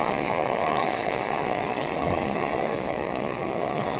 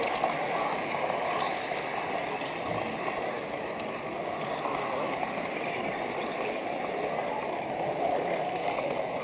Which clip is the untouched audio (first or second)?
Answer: second